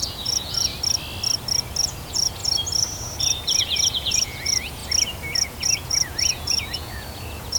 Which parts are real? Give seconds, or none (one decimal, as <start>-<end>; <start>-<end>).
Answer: 0.7-1.8; 2.4-3.2; 4.8-5.4